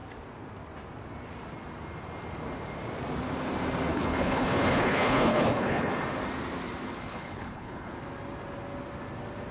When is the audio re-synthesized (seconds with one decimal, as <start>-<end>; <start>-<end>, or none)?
3.9-5.9; 7.1-7.9